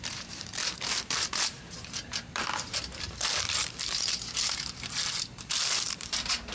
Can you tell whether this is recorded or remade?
remade